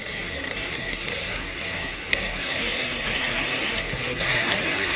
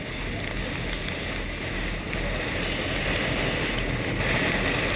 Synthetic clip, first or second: first